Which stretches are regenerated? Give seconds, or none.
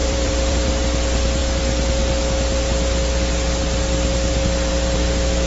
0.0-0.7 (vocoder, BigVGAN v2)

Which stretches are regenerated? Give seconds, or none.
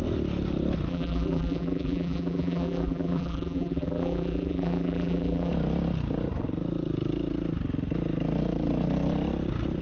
0.9-5.5 (vocoder, BigVGAN v2)